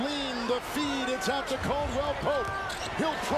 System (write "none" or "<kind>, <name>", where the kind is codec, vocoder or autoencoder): none